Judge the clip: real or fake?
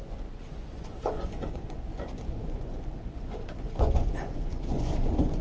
fake